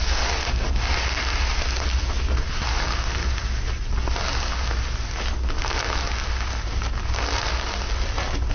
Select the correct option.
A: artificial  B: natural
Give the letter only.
B